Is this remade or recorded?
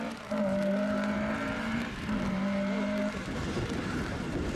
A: remade